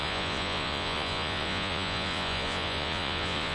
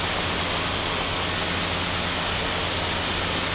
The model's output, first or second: first